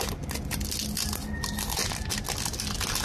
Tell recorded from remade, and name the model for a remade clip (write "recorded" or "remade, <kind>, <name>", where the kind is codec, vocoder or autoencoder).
recorded